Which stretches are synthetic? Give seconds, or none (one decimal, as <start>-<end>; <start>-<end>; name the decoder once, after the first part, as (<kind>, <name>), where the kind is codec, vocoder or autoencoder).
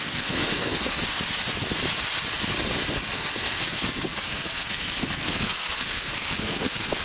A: 0.0-1.0 (codec, SNAC); 3.1-7.0